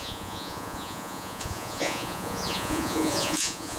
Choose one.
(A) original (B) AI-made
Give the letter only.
B